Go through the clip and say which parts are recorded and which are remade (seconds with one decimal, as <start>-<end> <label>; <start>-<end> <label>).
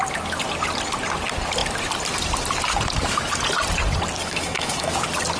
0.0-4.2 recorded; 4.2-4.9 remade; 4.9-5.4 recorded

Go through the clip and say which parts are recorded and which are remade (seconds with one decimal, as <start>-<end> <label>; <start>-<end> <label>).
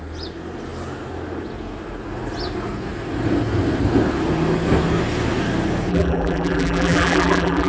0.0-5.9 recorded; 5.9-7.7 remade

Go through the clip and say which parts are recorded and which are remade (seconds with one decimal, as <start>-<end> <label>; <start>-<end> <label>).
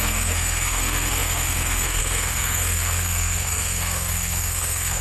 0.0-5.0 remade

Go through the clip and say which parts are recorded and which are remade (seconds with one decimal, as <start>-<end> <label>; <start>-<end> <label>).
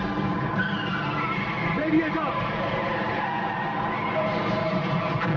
0.0-5.4 recorded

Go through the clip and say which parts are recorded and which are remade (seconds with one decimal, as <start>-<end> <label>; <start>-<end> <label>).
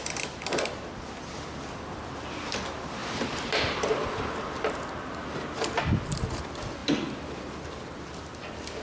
0.0-3.0 recorded; 3.0-4.2 remade; 4.2-8.8 recorded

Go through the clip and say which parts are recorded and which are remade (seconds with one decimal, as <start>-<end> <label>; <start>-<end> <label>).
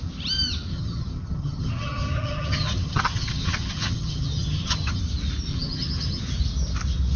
0.0-0.7 recorded; 0.7-5.0 remade; 5.0-5.5 recorded; 5.5-6.2 remade; 6.2-7.2 recorded